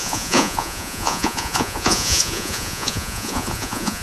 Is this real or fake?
fake